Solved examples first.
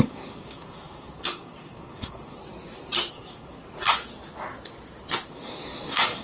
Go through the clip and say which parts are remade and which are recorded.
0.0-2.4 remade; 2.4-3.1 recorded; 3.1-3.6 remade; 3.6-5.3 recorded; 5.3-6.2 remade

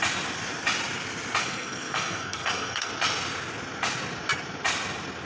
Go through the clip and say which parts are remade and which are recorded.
0.0-1.4 recorded; 1.4-2.9 remade; 2.9-5.3 recorded

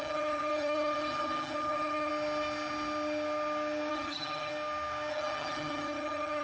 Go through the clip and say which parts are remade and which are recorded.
0.0-2.1 remade; 2.1-3.9 recorded; 3.9-4.5 remade; 4.5-5.1 recorded; 5.1-6.4 remade

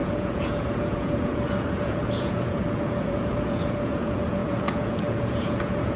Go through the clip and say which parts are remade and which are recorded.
0.0-6.0 remade

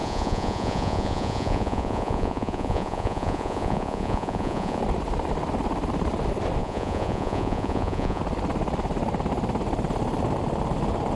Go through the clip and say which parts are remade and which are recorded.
0.0-4.8 remade; 4.8-6.6 recorded; 6.6-8.2 remade; 8.2-11.2 recorded